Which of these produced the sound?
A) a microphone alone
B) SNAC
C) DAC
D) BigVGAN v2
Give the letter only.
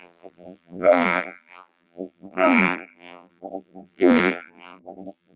D